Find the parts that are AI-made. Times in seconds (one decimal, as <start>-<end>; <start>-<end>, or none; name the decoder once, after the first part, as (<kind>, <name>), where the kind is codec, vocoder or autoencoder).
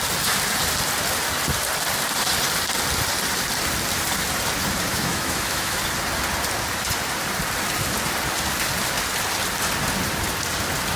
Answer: 4.9-5.8 (autoencoder, DAC-VAE)